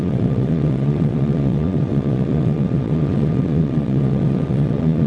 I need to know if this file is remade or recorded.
remade